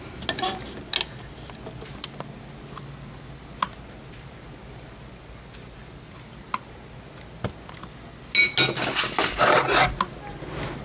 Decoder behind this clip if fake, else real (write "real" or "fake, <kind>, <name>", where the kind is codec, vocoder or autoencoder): real